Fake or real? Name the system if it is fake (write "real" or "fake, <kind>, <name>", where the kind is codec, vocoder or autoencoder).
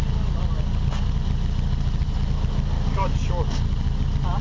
real